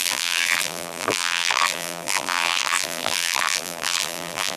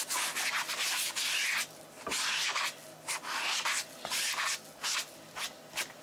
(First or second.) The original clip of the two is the second